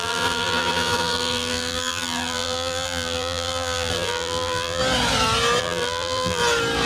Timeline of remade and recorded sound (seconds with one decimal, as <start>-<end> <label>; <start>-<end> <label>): 0.0-4.8 remade; 4.8-5.6 recorded; 5.6-6.4 remade; 6.4-6.9 recorded